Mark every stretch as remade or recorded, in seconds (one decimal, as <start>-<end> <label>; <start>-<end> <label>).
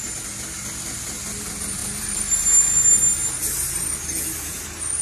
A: 0.0-5.0 recorded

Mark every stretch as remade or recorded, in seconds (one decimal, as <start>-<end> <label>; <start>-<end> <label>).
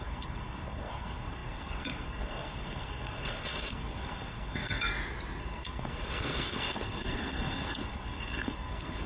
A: 0.0-4.9 remade; 4.9-5.4 recorded; 5.4-9.1 remade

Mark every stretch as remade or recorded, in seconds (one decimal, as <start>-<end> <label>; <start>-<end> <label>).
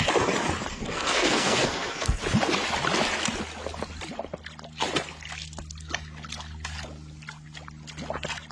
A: 0.0-0.7 recorded; 0.7-2.2 remade; 2.2-8.5 recorded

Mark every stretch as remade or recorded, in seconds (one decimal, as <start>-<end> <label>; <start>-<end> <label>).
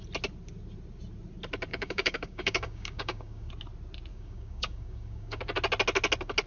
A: 0.0-1.7 recorded; 1.7-3.5 remade; 3.5-4.1 recorded; 4.1-5.4 remade; 5.4-6.5 recorded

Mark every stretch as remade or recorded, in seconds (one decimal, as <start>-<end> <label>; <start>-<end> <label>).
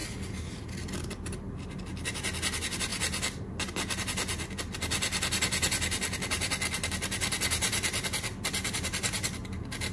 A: 0.0-9.9 recorded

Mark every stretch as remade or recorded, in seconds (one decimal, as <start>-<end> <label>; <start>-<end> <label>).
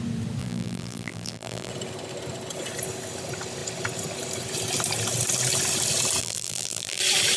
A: 0.0-0.4 recorded; 0.4-1.7 remade; 1.7-6.2 recorded; 6.2-7.0 remade; 7.0-7.4 recorded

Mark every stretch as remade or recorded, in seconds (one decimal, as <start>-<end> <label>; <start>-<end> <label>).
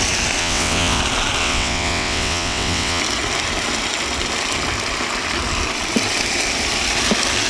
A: 0.0-0.4 recorded; 0.4-1.0 remade; 1.0-1.4 recorded; 1.4-3.0 remade; 3.0-7.5 recorded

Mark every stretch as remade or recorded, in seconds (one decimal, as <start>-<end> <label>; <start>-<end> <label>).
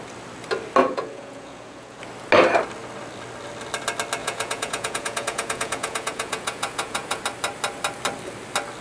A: 0.0-0.8 recorded; 0.8-2.0 remade; 2.0-4.2 recorded; 4.2-7.2 remade; 7.2-8.8 recorded